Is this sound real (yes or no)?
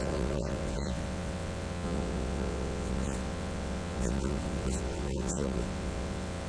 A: no